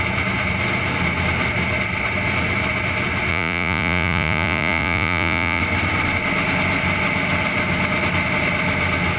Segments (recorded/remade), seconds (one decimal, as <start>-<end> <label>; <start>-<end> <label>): 0.0-3.3 recorded; 3.3-5.6 remade; 5.6-9.2 recorded